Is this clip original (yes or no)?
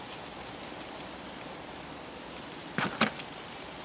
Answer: yes